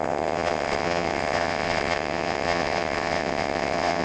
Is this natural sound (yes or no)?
no